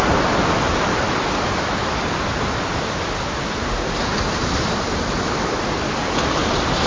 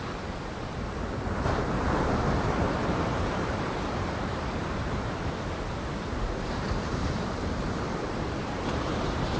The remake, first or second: second